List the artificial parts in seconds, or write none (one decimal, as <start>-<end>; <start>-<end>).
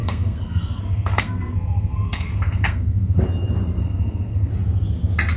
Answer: 0.0-3.2; 3.8-4.5